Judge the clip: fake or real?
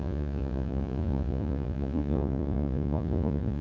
fake